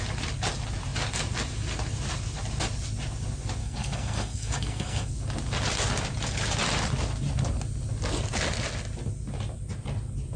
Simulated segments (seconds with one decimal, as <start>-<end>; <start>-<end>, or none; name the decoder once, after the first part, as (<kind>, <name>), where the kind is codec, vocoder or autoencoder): 3.6-5.1 (codec, SNAC)